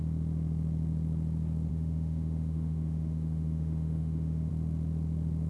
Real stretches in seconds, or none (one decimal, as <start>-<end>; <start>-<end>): 0.0-1.7; 4.5-5.5